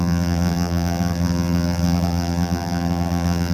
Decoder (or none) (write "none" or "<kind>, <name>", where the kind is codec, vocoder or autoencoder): vocoder, BigVGAN v2